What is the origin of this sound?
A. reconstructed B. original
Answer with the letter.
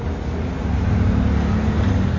B